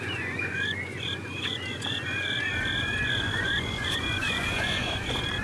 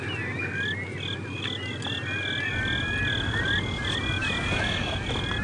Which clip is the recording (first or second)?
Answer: second